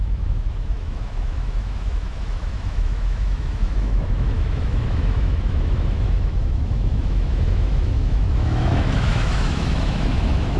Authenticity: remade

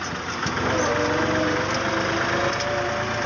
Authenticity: recorded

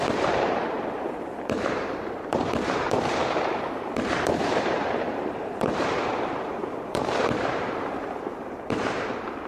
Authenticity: remade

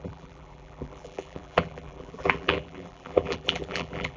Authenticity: remade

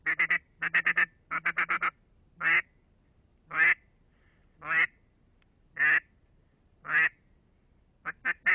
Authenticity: recorded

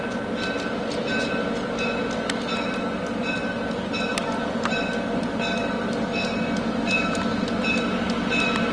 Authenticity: recorded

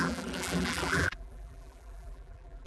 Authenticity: remade